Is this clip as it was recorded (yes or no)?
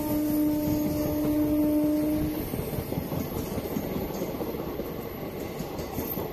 yes